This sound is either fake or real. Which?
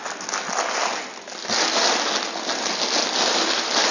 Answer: real